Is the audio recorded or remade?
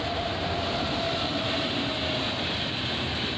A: recorded